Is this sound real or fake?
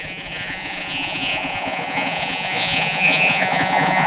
fake